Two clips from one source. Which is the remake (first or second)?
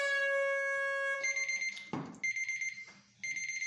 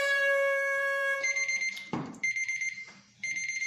second